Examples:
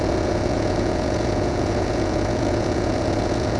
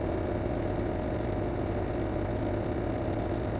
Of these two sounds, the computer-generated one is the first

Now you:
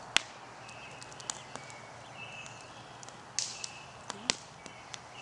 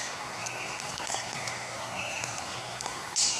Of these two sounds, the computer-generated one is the second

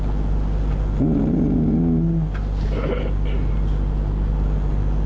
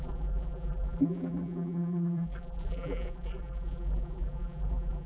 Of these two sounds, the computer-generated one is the second